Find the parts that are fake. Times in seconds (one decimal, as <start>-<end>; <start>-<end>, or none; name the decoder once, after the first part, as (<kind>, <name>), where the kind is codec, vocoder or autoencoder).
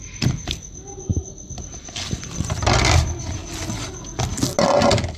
0.0-3.4 (vocoder, BigVGAN v2)